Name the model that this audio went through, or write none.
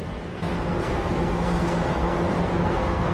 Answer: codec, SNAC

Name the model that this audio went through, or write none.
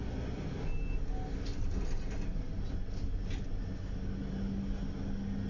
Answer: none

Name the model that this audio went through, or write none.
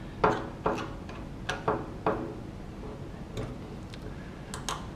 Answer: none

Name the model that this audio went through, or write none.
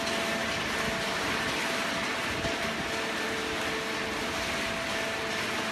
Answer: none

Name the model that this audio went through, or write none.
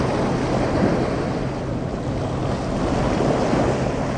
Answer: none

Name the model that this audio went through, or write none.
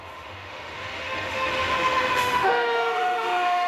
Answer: autoencoder, DAC-VAE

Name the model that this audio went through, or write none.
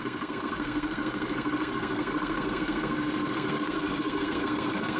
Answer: codec, SNAC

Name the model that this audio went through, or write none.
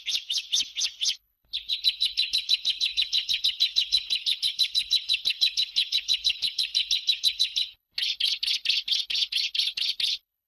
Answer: codec, HILCodec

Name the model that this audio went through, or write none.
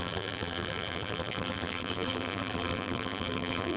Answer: vocoder, BigVGAN v2